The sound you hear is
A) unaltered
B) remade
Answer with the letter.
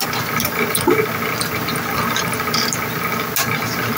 A